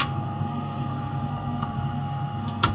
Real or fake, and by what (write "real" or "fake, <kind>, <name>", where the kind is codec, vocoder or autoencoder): fake, codec, SNAC